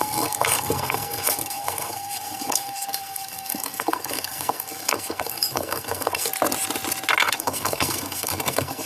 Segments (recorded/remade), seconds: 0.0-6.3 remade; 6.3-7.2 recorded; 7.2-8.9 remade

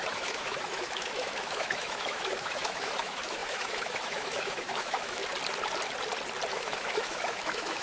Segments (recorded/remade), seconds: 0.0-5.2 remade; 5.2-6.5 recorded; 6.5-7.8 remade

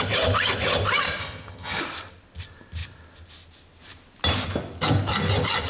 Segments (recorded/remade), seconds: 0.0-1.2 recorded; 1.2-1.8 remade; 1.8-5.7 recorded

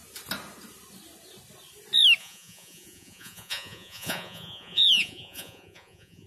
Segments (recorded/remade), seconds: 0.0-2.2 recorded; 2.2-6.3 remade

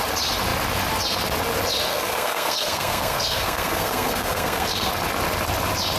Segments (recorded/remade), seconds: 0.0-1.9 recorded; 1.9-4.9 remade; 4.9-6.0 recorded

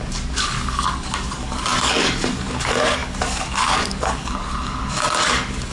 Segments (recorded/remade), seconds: 0.0-5.7 remade